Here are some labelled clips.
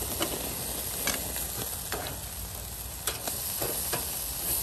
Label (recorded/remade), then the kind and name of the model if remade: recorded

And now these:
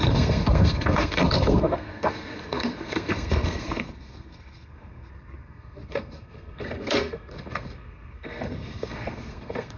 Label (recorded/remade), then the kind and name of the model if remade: remade, codec, SNAC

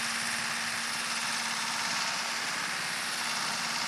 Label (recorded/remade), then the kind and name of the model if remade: recorded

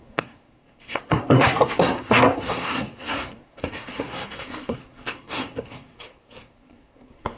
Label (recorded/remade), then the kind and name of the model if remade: remade, codec, SNAC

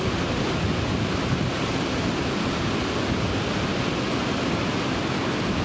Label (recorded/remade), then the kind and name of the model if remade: recorded